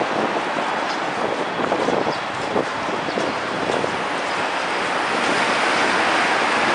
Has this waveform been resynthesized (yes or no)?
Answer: no